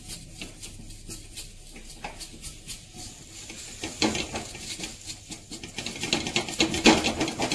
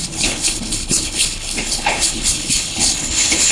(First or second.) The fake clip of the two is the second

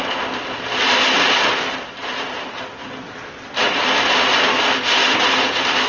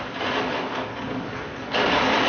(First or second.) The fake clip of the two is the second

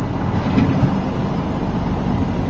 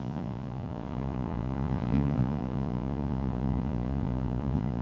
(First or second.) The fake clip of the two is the second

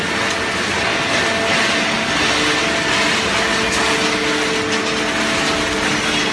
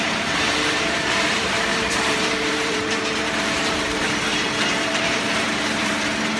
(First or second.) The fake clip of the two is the second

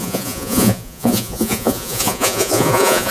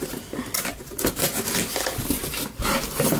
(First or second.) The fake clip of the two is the first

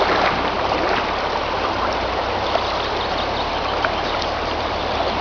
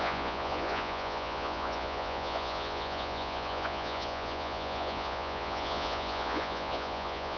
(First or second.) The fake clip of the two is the second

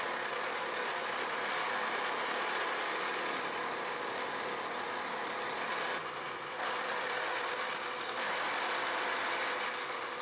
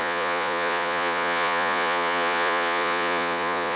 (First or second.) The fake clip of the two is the second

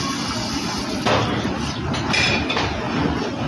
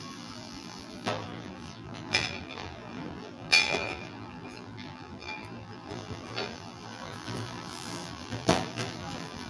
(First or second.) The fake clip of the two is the second